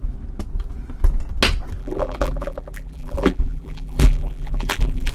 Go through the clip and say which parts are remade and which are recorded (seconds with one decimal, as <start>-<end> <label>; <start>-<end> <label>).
0.0-1.8 recorded; 1.8-5.1 remade